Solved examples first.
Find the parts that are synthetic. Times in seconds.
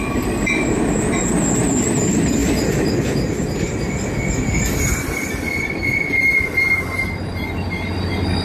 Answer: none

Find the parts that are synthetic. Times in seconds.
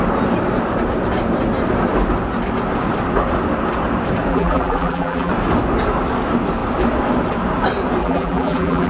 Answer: 4.3-5.3 (vocoder, BigVGAN v2); 8.0-8.9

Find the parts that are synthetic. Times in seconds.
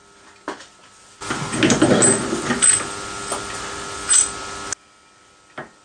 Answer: none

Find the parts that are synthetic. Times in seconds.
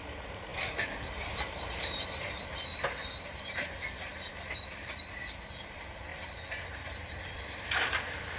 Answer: 0.0-8.4 (vocoder, BigVGAN v2)